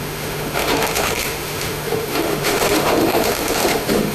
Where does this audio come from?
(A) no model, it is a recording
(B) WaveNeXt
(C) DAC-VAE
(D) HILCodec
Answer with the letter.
C